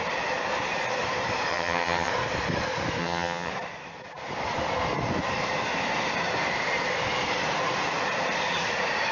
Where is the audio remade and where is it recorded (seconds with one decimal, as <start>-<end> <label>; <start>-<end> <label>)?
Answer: 0.0-1.5 recorded; 1.5-2.1 remade; 2.1-3.0 recorded; 3.0-3.5 remade; 3.5-9.1 recorded